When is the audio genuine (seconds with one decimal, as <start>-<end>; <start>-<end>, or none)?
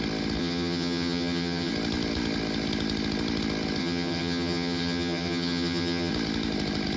0.0-0.4; 1.7-3.8; 6.1-7.0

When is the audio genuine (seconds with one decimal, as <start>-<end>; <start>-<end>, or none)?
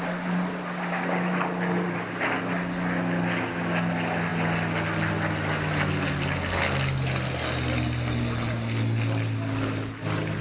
0.0-10.4